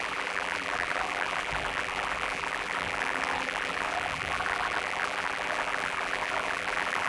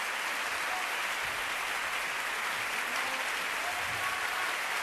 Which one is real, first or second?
second